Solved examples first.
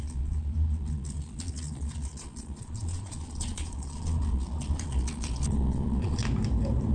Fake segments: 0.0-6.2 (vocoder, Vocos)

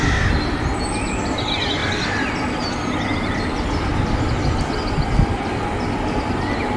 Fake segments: none

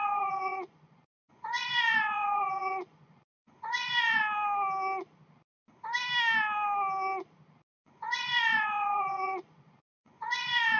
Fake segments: 0.0-4.2 (vocoder, Vocos); 7.7-10.8

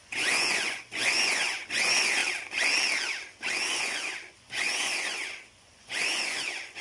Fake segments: 0.0-2.2 (vocoder, Vocos); 3.7-6.8

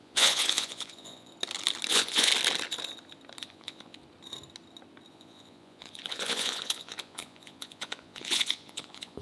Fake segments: 0.0-1.3 (vocoder, Vocos); 1.9-2.3; 3.4-4.0; 5.1-9.2